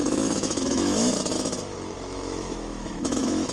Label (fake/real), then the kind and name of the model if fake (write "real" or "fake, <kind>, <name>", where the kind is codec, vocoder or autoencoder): fake, autoencoder, DAC-VAE